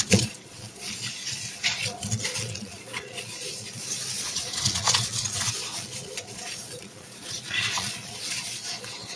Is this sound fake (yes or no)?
yes